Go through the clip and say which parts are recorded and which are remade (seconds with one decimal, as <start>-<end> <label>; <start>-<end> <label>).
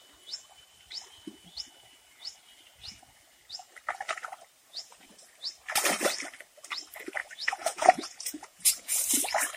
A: 0.0-4.6 recorded; 4.6-5.1 remade; 5.1-7.2 recorded; 7.2-9.1 remade; 9.1-9.6 recorded